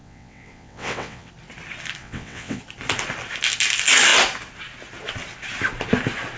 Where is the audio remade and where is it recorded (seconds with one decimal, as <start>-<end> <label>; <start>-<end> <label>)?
0.0-1.3 remade; 1.3-2.0 recorded; 2.0-2.6 remade; 2.6-6.4 recorded